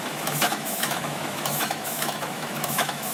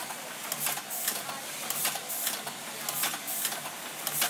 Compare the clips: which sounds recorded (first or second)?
second